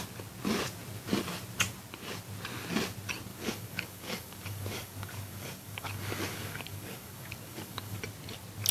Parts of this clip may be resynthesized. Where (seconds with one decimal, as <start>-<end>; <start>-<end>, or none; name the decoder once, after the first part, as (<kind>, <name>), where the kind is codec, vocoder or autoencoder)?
3.3-8.0 (codec, DAC)